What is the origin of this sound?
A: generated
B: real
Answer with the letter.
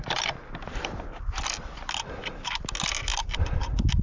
B